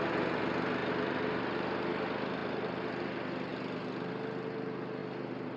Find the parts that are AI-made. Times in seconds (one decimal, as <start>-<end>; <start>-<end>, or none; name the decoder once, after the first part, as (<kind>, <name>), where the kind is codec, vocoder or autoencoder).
0.8-1.4 (vocoder, BigVGAN v2); 2.4-2.9; 5.0-5.6